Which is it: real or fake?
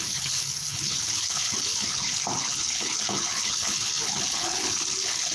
fake